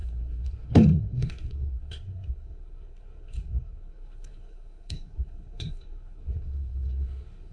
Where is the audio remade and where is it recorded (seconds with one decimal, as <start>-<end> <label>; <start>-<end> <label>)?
0.0-7.5 remade